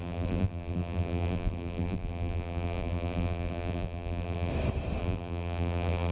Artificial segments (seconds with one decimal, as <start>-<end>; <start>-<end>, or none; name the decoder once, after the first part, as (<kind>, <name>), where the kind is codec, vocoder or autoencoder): 0.0-4.5 (vocoder, BigVGAN v2); 5.0-6.1